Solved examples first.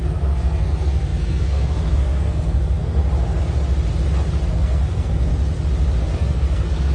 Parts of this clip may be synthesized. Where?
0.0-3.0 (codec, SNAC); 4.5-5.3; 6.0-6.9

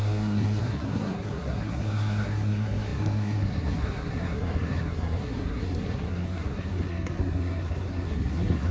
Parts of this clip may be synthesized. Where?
0.0-8.7 (codec, SNAC)

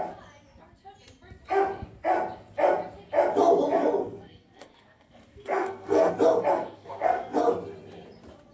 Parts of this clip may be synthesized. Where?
4.0-6.1 (codec, SNAC); 6.5-7.4

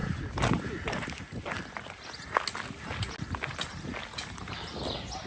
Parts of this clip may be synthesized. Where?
none

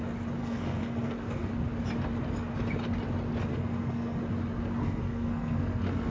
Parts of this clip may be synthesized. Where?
0.4-1.5 (codec, SNAC); 3.5-4.2; 4.8-6.1